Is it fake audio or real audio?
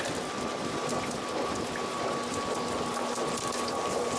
real